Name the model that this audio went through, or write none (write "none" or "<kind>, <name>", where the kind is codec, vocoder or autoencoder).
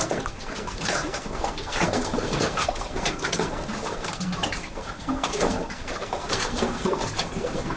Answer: codec, SNAC